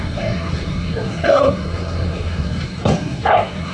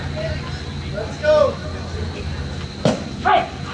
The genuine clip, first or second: second